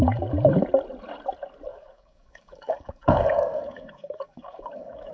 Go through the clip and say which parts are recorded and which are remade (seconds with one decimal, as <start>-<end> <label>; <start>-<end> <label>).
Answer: 0.0-1.7 recorded; 1.7-5.1 remade